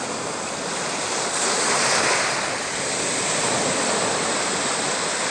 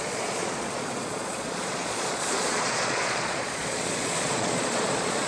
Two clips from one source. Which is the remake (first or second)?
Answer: second